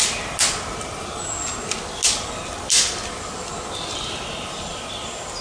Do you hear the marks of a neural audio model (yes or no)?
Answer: no